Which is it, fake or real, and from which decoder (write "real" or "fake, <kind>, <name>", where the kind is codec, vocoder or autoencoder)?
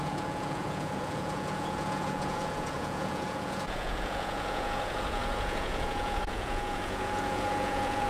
fake, vocoder, Vocos